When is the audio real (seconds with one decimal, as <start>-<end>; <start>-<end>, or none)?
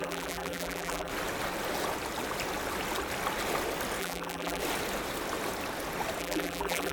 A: 1.1-4.0; 4.6-6.2